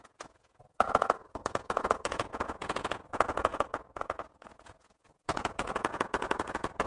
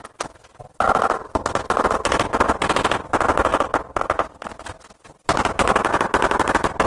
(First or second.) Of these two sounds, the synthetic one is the first